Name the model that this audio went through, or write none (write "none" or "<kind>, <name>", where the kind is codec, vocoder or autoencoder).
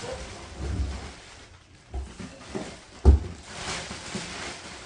none